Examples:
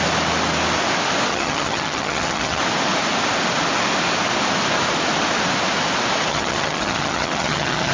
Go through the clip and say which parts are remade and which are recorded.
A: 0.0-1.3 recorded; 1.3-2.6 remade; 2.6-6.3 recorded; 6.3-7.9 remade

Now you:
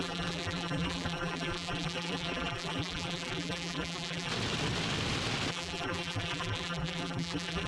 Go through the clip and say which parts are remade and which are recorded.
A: 0.0-4.3 remade; 4.3-5.5 recorded; 5.5-7.7 remade

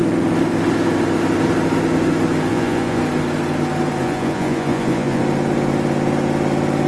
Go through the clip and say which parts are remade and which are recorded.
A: 0.0-2.5 recorded; 2.5-3.0 remade; 3.0-4.0 recorded; 4.0-5.2 remade; 5.2-6.9 recorded

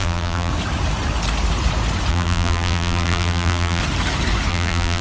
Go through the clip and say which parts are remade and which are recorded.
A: 0.0-0.5 remade; 0.5-2.1 recorded; 2.1-3.8 remade; 3.8-4.5 recorded; 4.5-5.0 remade

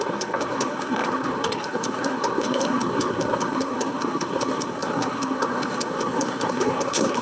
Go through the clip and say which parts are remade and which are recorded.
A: 0.0-7.2 remade

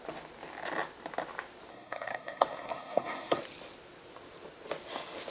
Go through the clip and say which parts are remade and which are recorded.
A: 0.0-1.7 recorded; 1.7-3.4 remade; 3.4-5.3 recorded

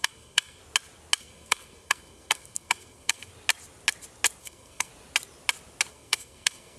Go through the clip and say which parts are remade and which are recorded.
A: 0.0-0.6 remade; 0.6-1.2 recorded; 1.2-3.3 remade; 3.3-4.4 recorded; 4.4-4.9 remade; 4.9-5.9 recorded; 5.9-6.8 remade

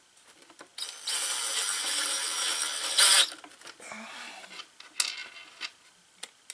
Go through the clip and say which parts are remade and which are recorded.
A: 0.0-6.5 recorded